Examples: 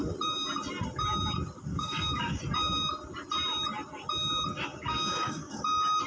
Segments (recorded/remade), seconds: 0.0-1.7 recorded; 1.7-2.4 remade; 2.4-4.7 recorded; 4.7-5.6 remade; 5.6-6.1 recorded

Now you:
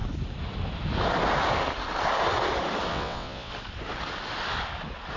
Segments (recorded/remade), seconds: 0.0-2.9 recorded; 2.9-3.5 remade; 3.5-5.2 recorded

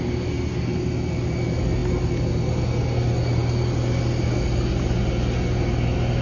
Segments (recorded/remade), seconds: 0.0-6.2 recorded

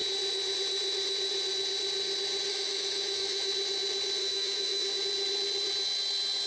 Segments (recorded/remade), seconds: 0.0-2.5 recorded; 2.5-3.5 remade; 3.5-4.2 recorded; 4.2-5.0 remade; 5.0-6.5 recorded

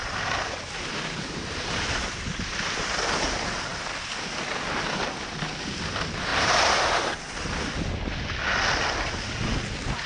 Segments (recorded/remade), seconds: 0.0-1.7 remade; 1.7-6.3 recorded; 6.3-7.2 remade; 7.2-10.1 recorded

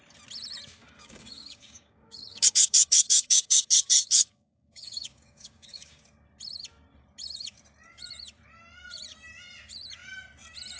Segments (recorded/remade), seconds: 0.0-0.8 recorded; 0.8-6.0 remade; 6.0-10.8 recorded

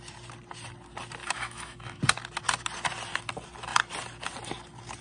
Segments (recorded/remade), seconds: 0.0-1.2 recorded; 1.2-2.0 remade; 2.0-5.0 recorded